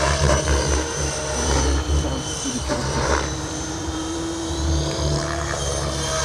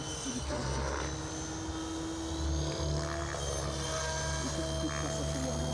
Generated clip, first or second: first